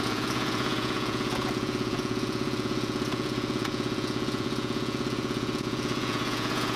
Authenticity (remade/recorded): remade